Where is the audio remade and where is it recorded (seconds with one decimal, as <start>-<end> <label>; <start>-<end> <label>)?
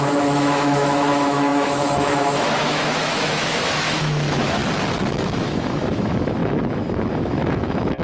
0.0-4.6 remade; 4.6-5.1 recorded; 5.1-8.0 remade